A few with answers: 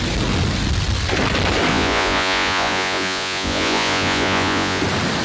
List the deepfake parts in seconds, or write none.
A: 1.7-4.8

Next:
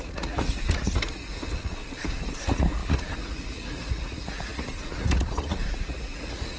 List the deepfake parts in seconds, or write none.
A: 0.0-1.4; 2.0-6.6